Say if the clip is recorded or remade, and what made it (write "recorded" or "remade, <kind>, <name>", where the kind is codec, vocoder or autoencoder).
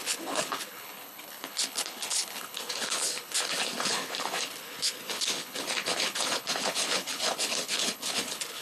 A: remade, codec, HILCodec